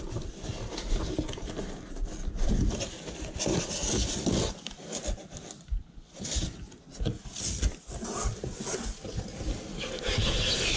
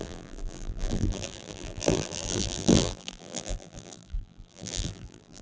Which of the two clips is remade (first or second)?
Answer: second